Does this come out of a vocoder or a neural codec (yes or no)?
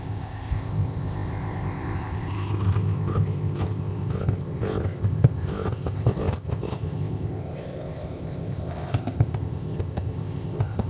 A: yes